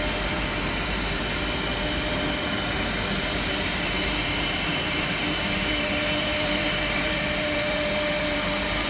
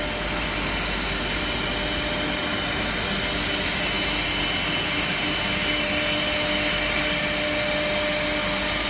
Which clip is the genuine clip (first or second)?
second